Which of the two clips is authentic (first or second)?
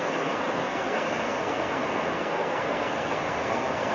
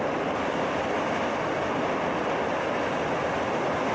second